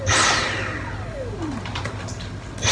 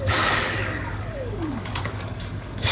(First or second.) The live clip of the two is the first